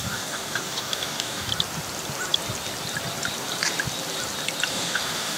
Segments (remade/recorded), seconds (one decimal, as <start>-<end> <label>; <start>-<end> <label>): 0.0-1.5 remade; 1.5-4.7 recorded; 4.7-5.4 remade